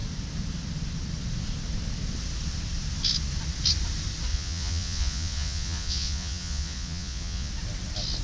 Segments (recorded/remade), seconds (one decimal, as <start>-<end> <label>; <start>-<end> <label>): 0.0-4.3 recorded; 4.3-7.5 remade; 7.5-8.2 recorded